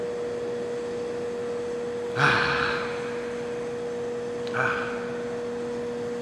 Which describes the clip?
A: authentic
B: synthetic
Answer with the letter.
A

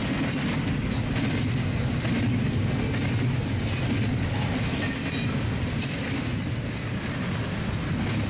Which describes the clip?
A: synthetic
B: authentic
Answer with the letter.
B